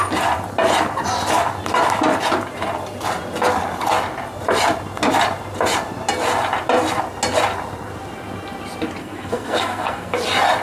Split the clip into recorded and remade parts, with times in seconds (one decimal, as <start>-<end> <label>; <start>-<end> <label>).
0.0-9.0 recorded; 9.0-10.2 remade; 10.2-10.6 recorded